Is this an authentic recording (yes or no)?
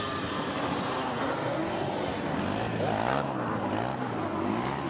yes